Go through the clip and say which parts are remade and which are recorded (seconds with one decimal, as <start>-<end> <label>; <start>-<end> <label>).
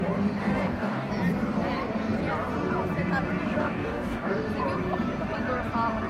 0.0-0.4 recorded; 0.4-1.1 remade; 1.1-3.6 recorded; 3.6-4.4 remade; 4.4-6.1 recorded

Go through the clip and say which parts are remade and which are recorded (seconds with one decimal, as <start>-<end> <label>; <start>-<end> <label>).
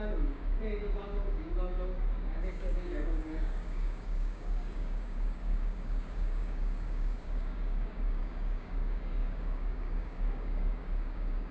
0.0-11.5 remade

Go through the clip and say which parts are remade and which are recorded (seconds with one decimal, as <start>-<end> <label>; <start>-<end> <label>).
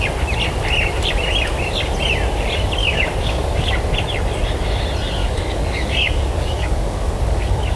0.0-2.8 recorded; 2.8-3.8 remade; 3.8-5.2 recorded; 5.2-7.8 remade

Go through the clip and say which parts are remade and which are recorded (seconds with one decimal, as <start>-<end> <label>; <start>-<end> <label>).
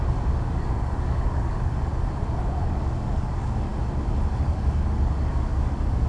0.0-1.9 remade; 1.9-2.6 recorded; 2.6-3.7 remade; 3.7-4.3 recorded; 4.3-6.1 remade